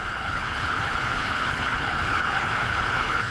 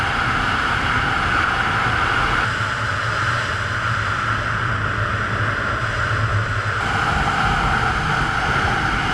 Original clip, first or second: second